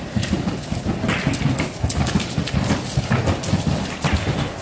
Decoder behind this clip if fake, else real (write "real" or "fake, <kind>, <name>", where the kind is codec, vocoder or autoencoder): real